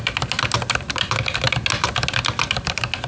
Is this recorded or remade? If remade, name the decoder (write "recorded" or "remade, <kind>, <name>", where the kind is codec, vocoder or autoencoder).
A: recorded